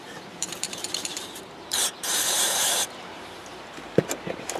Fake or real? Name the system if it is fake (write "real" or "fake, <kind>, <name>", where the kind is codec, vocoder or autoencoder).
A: fake, vocoder, BigVGAN v2